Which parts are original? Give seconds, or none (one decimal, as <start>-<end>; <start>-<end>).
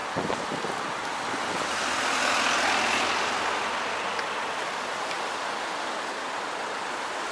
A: 0.0-4.4